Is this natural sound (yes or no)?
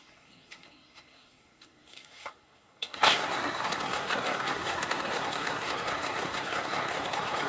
no